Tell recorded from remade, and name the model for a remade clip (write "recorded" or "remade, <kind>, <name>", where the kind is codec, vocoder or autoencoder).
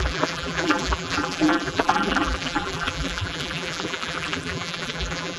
remade, vocoder, BigVGAN v2